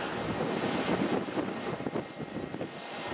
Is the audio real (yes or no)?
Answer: yes